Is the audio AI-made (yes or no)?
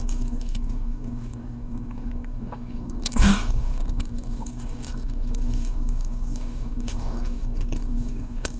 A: yes